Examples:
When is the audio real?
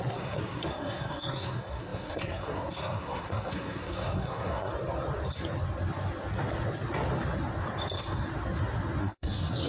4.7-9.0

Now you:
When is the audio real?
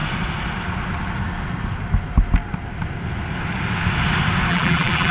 0.0-4.5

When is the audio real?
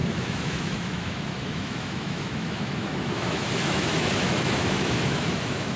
none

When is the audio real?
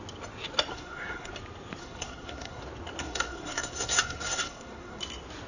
0.0-0.7; 1.3-1.8; 2.6-3.0; 5.0-5.5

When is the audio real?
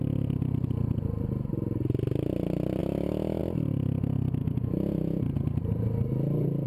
0.0-2.8; 3.4-4.4; 5.2-6.7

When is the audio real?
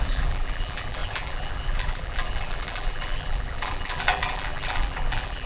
none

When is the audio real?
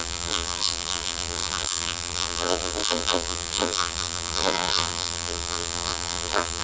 none